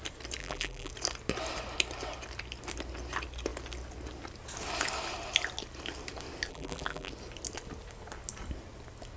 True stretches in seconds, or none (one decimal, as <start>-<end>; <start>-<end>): 0.0-0.4; 0.9-6.5; 7.1-9.2